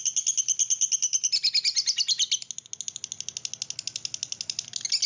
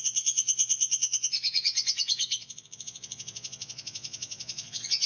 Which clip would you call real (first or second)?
first